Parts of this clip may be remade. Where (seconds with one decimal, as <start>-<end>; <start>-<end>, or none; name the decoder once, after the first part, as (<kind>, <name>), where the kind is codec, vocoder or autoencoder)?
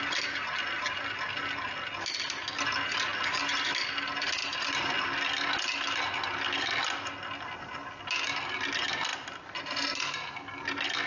none